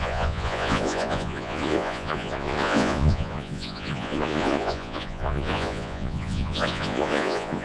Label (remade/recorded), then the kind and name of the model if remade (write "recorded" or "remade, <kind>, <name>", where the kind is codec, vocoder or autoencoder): remade, vocoder, Vocos